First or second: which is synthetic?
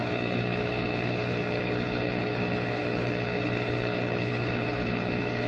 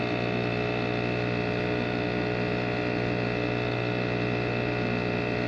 first